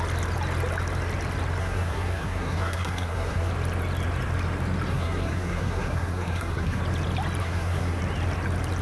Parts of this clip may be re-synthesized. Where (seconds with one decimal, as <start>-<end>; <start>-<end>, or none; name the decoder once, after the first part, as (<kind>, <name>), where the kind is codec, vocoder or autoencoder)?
1.6-3.5 (codec, SNAC); 4.9-6.8; 7.4-8.0